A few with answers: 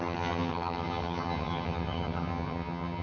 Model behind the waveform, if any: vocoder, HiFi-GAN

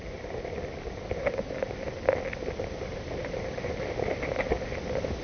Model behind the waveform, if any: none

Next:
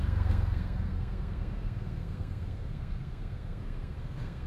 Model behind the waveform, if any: codec, SNAC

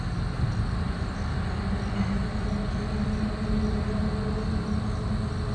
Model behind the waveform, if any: none